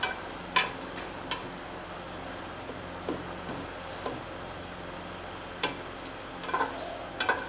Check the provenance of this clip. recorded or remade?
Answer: recorded